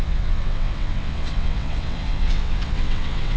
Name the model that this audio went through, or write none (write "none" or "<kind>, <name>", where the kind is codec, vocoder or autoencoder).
vocoder, WaveNeXt